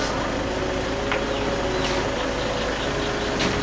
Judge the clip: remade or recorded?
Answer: recorded